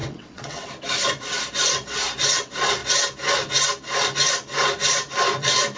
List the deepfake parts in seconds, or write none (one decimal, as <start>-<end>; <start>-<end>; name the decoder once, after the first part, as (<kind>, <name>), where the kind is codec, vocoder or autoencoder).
0.0-0.7 (vocoder, WaveNeXt)